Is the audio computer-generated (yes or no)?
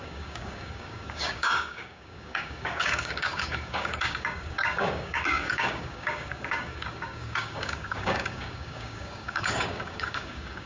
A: yes